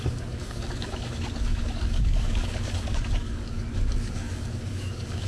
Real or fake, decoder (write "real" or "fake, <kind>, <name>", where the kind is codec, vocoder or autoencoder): fake, codec, DAC